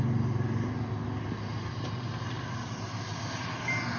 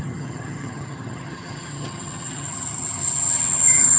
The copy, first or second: second